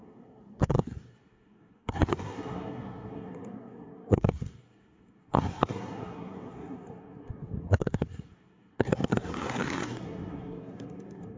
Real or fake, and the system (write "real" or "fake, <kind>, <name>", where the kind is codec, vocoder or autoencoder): fake, codec, SNAC